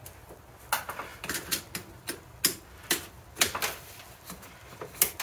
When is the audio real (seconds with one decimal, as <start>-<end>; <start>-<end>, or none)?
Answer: 0.0-5.2